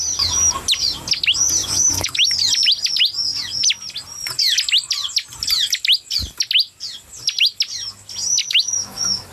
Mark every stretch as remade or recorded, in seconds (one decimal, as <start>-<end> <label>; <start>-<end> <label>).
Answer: 0.0-1.6 recorded; 1.6-2.3 remade; 2.3-8.4 recorded; 8.4-9.3 remade